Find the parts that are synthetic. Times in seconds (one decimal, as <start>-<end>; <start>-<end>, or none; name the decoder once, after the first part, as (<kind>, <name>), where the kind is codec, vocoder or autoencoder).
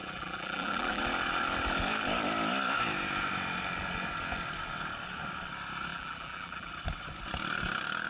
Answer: 0.0-1.0 (vocoder, BigVGAN v2); 5.9-6.7